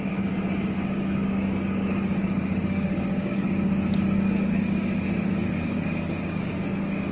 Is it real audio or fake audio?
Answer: fake